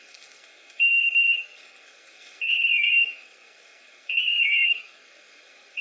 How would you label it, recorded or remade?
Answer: remade